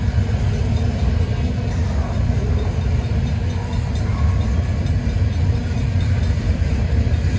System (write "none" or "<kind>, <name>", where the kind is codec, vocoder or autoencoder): none